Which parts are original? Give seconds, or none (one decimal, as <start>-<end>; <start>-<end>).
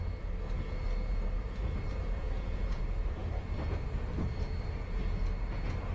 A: 0.0-2.2; 2.8-5.9